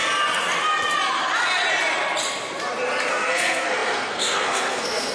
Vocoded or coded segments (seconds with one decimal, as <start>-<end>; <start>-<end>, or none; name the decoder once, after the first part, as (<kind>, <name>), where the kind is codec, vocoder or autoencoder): 3.1-5.1 (codec, SNAC)